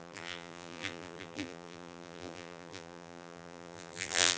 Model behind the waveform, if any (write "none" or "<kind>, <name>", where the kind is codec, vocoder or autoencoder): vocoder, BigVGAN v2